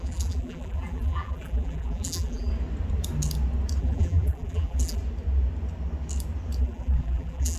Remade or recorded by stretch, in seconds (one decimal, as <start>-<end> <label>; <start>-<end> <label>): 0.0-2.5 remade; 2.5-3.8 recorded; 3.8-5.0 remade; 5.0-6.6 recorded; 6.6-7.6 remade